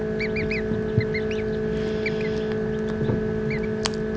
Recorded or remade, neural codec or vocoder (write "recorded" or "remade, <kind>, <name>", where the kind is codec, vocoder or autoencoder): recorded